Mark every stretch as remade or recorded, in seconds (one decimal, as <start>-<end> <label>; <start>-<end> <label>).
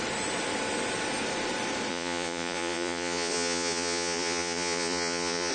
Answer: 0.0-1.9 recorded; 1.9-5.5 remade